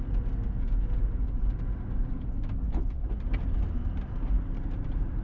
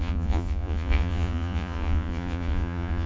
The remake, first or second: second